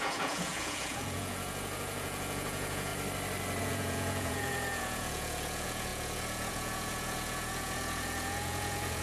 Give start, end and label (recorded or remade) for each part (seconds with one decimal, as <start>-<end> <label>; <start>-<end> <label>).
0.0-2.9 remade; 2.9-3.6 recorded; 3.6-9.0 remade